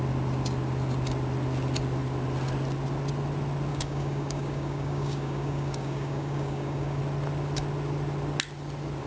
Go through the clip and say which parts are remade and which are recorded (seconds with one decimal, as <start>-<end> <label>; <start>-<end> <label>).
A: 0.0-3.7 recorded; 3.7-7.0 remade; 7.0-9.1 recorded